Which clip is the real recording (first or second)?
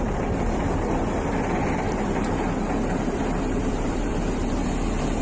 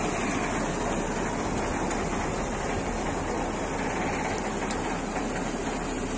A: second